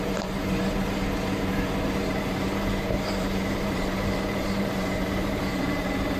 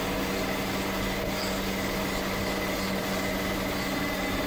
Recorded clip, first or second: second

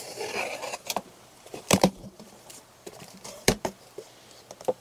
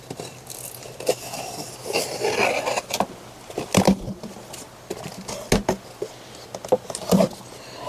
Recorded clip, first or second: second